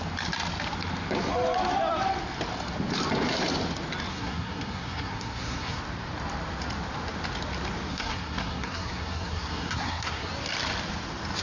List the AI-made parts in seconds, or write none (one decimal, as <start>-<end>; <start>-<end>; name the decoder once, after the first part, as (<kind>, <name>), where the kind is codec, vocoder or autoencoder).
4.1-5.8 (codec, SNAC); 7.9-10.3